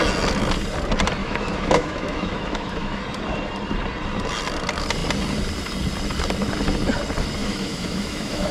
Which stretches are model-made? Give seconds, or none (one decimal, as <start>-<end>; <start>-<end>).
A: 1.2-3.0; 7.4-8.5